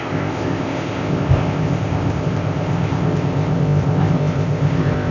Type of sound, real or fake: fake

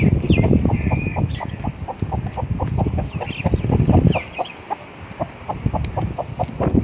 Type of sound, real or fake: real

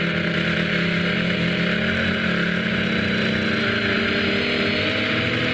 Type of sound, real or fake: real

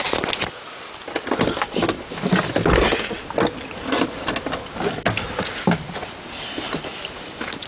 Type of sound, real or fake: real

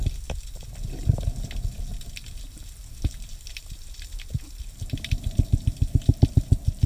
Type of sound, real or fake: real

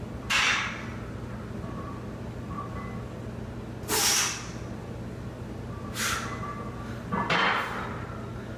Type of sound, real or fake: real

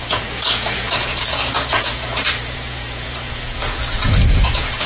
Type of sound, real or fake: fake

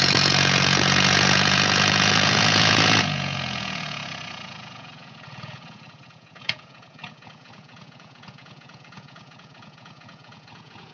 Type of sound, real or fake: fake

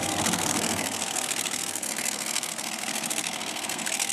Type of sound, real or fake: fake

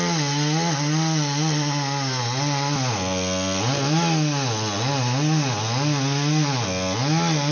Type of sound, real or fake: real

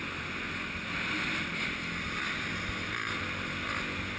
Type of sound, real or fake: real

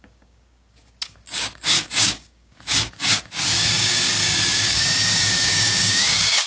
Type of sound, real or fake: fake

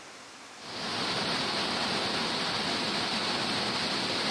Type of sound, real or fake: real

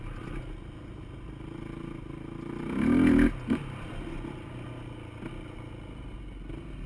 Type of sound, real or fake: real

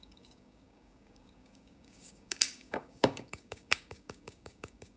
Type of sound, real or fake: fake